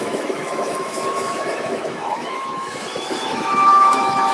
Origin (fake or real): fake